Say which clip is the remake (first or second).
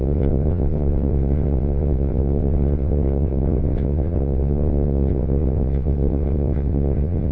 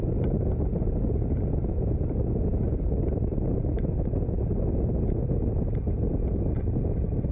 first